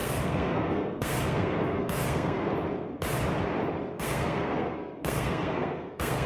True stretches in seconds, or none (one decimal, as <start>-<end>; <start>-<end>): 2.5-4.0